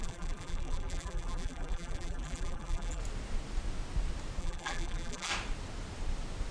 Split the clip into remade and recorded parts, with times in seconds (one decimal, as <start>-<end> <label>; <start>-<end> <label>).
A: 0.0-3.0 remade; 3.0-4.4 recorded; 4.4-5.3 remade; 5.3-6.5 recorded